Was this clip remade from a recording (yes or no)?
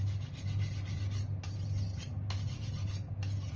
no